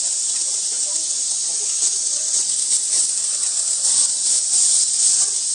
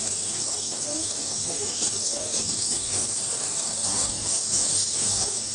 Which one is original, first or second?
first